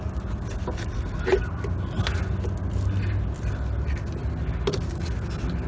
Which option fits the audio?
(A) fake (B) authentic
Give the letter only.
B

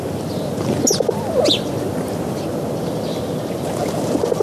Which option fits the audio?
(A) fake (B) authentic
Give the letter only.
B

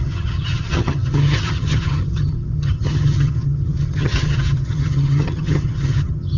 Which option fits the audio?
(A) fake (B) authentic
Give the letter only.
A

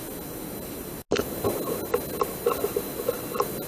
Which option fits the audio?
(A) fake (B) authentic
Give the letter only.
B